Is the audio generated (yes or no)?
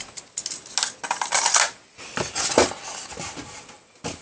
no